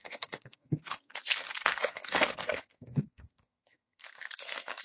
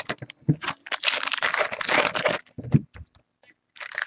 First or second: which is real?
second